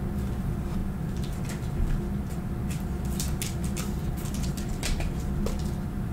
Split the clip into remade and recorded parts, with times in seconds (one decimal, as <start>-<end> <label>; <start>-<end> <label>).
0.0-6.1 recorded